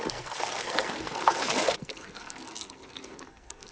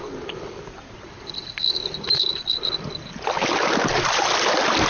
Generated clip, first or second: first